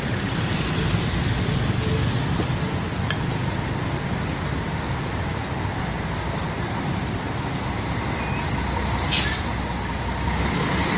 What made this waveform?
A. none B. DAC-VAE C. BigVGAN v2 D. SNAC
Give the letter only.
A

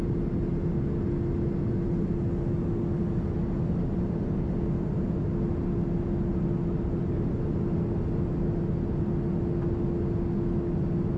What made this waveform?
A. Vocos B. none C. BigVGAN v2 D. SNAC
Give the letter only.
B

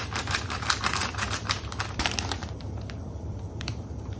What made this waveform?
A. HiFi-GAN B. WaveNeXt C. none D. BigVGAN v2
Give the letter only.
D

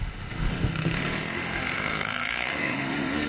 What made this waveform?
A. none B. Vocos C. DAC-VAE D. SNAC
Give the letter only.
C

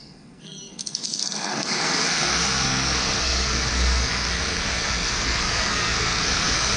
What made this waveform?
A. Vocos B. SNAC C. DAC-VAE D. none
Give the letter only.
B